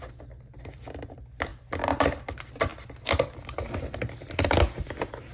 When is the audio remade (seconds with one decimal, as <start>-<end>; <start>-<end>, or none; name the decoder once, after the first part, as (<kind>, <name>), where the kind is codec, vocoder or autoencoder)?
none